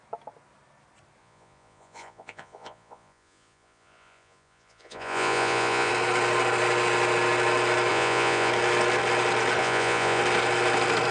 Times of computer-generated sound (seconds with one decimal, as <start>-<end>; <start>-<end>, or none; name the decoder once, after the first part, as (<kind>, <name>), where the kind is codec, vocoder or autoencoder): 1.2-5.9 (vocoder, Vocos); 7.9-8.5; 9.6-10.2